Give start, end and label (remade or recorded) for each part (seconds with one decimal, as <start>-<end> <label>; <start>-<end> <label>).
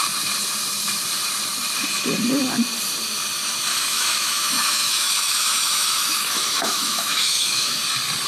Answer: 0.0-3.7 recorded; 3.7-7.8 remade; 7.8-8.3 recorded